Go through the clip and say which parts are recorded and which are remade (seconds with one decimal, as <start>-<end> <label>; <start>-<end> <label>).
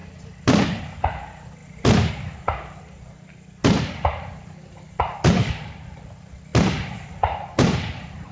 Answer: 0.0-0.8 remade; 0.8-1.6 recorded; 1.6-2.1 remade; 2.1-3.6 recorded; 3.6-5.5 remade; 5.5-8.3 recorded